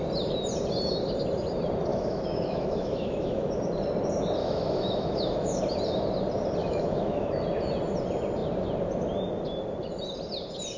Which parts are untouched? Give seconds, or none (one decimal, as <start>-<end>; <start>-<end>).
0.0-1.9; 3.5-4.4; 5.6-6.6; 7.3-10.8